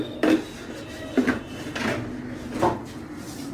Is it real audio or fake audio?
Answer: real